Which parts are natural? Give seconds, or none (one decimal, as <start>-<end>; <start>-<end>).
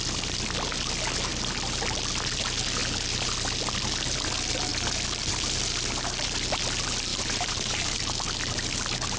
0.0-7.1; 8.0-9.2